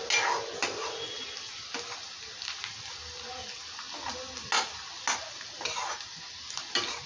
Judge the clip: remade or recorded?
recorded